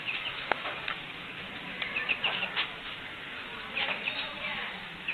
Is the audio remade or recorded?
remade